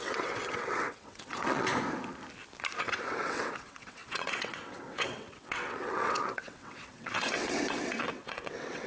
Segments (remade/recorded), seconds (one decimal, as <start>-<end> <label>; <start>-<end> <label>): 0.0-1.7 remade; 1.7-2.8 recorded; 2.8-8.9 remade

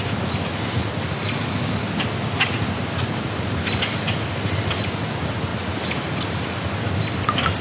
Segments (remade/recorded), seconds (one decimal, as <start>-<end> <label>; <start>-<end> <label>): 0.0-7.6 recorded

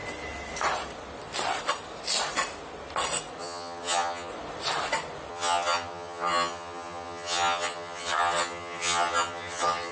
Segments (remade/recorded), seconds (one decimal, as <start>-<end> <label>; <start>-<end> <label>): 0.0-3.4 recorded; 3.4-4.3 remade; 4.3-5.3 recorded; 5.3-9.9 remade

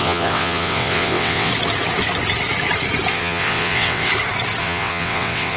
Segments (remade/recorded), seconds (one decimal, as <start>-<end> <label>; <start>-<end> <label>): 0.0-1.5 remade; 1.5-3.1 recorded; 3.1-4.1 remade; 4.1-4.6 recorded; 4.6-5.6 remade

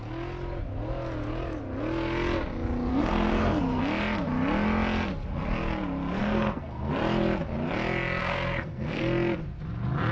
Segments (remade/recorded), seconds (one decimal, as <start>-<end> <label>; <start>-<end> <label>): 0.0-2.9 recorded; 2.9-3.8 remade; 3.8-6.2 recorded; 6.2-6.9 remade; 6.9-8.2 recorded; 8.2-9.0 remade; 9.0-10.1 recorded

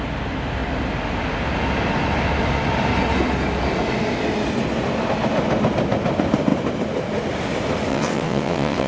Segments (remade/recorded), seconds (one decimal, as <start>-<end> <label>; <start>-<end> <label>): 0.0-7.9 recorded; 7.9-8.9 remade